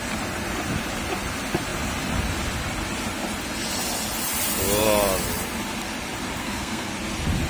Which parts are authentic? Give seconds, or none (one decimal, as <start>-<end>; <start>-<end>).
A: 0.0-6.4; 6.9-7.5